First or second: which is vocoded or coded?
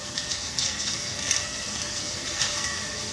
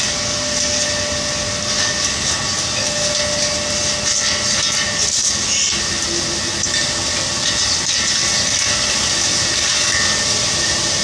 first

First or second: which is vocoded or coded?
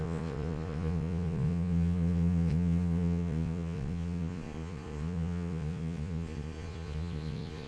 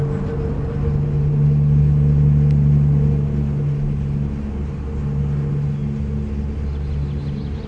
first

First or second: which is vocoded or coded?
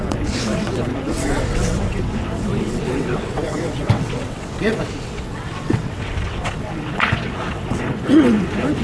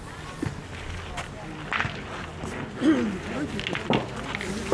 first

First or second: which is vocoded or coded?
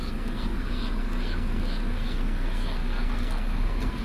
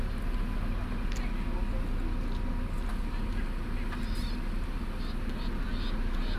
first